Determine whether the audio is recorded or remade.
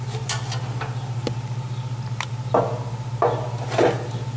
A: recorded